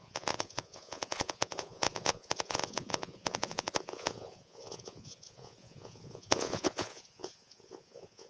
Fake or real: fake